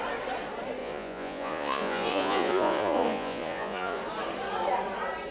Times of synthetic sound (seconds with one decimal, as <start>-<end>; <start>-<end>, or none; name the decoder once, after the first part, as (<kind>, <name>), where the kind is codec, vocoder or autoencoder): 0.8-4.0 (vocoder, Vocos)